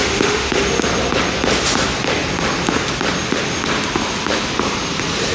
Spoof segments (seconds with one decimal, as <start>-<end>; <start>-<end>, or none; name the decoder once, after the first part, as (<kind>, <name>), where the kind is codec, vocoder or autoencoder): 0.0-0.6 (autoencoder, DAC-VAE)